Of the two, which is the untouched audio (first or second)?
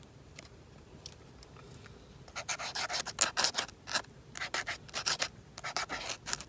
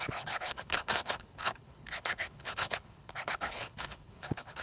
first